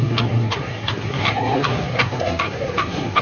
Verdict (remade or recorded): remade